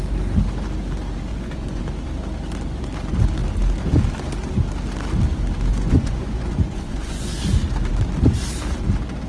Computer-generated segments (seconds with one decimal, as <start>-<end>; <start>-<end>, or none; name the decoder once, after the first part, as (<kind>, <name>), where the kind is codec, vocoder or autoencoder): 1.3-1.8 (vocoder, Vocos); 5.7-7.4